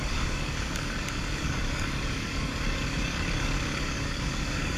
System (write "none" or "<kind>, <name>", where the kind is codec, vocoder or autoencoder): codec, DAC